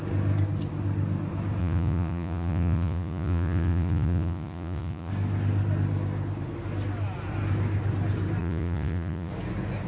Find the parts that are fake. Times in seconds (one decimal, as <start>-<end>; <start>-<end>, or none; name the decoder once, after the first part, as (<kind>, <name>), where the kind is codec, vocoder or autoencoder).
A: 1.6-5.1 (vocoder, Vocos); 8.4-9.3